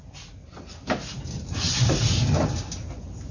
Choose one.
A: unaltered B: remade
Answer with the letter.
A